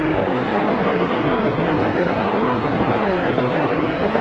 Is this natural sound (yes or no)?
no